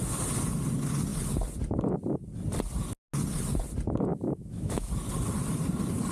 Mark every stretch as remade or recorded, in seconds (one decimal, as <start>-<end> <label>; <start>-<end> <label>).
0.0-4.1 recorded; 4.1-4.9 remade; 4.9-6.1 recorded